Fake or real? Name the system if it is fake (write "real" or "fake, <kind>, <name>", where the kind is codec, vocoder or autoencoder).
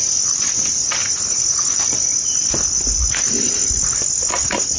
real